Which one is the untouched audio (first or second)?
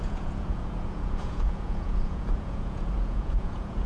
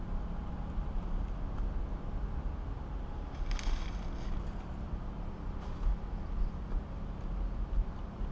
second